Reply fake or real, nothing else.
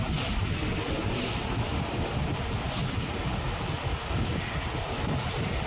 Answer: real